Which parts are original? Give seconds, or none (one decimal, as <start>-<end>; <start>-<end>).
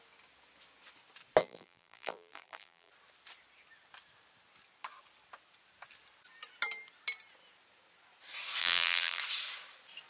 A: 0.0-1.4; 2.9-8.6; 9.2-10.1